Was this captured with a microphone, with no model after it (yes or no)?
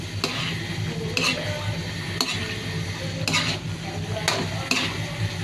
yes